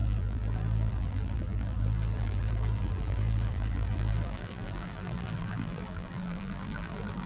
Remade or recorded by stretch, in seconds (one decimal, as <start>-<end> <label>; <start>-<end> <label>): 0.0-7.3 remade

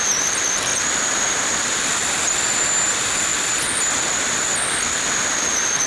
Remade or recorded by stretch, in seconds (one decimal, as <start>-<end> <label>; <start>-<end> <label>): 0.0-1.9 recorded; 1.9-2.5 remade; 2.5-3.3 recorded; 3.3-4.4 remade; 4.4-5.9 recorded

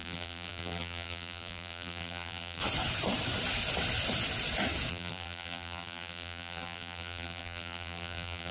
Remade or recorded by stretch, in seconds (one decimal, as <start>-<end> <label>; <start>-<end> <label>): 0.0-2.6 remade; 2.6-4.9 recorded; 4.9-8.5 remade